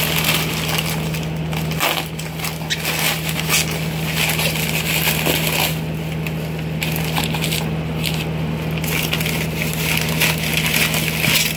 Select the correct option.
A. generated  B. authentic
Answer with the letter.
B